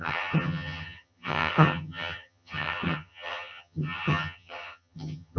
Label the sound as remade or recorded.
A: remade